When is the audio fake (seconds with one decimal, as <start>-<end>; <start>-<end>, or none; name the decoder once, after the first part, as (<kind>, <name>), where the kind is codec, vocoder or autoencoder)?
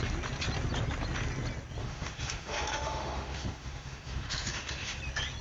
1.8-5.0 (autoencoder, DAC-VAE)